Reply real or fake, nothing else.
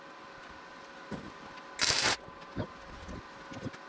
real